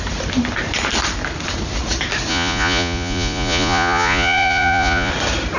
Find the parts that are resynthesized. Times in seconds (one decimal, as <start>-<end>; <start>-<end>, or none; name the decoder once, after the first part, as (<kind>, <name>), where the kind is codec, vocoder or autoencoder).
2.3-5.1 (vocoder, Vocos)